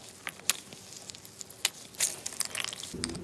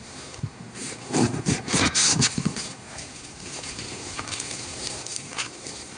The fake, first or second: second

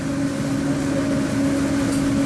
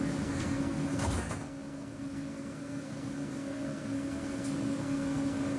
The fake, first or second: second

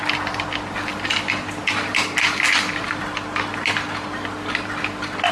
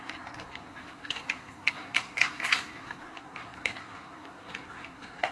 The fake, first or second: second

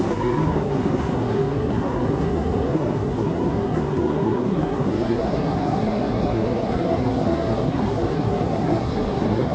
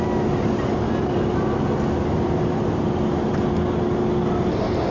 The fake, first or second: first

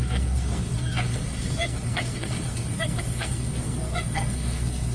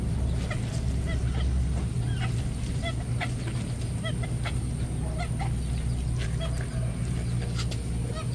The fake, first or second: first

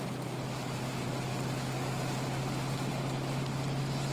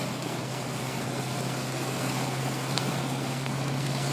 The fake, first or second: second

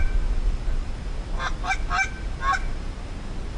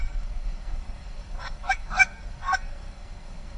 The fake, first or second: second